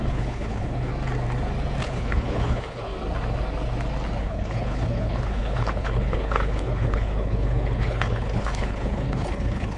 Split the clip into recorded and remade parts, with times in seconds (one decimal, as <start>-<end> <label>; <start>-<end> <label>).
0.0-0.9 remade; 0.9-1.8 recorded; 1.8-2.9 remade; 2.9-4.2 recorded; 4.2-9.8 remade

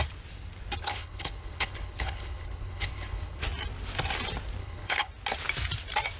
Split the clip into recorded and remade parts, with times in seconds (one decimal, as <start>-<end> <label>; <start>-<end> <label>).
0.0-0.8 recorded; 0.8-3.4 remade; 3.4-4.6 recorded; 4.6-5.1 remade; 5.1-6.2 recorded

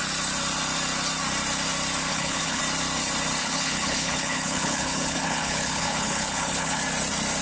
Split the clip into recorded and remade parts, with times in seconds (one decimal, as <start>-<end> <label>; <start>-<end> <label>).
0.0-2.1 recorded; 2.1-2.6 remade; 2.6-3.4 recorded; 3.4-6.8 remade; 6.8-7.4 recorded

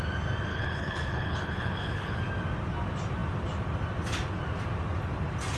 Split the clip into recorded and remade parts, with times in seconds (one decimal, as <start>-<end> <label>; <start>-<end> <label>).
0.0-0.5 recorded; 0.5-2.2 remade; 2.2-5.6 recorded

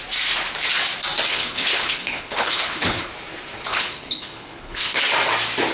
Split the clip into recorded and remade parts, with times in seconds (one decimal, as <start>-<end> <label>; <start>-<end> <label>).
0.0-1.3 recorded; 1.3-3.1 remade; 3.1-3.7 recorded; 3.7-5.0 remade; 5.0-5.7 recorded

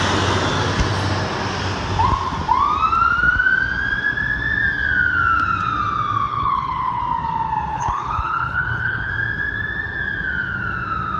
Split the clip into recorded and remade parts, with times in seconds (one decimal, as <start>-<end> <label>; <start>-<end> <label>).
0.0-6.3 recorded; 6.3-7.0 remade; 7.0-7.7 recorded; 7.7-9.1 remade; 9.1-11.2 recorded

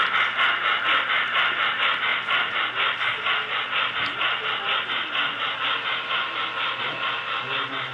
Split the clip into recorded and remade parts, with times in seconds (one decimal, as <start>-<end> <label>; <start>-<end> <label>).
0.0-7.9 recorded

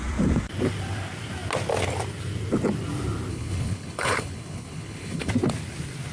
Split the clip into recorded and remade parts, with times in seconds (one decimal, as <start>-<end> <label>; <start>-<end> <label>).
0.0-3.3 recorded; 3.3-5.3 remade; 5.3-6.1 recorded